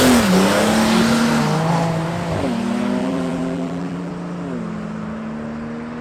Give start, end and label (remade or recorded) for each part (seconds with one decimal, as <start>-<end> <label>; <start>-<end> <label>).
0.0-3.0 recorded; 3.0-4.1 remade; 4.1-6.0 recorded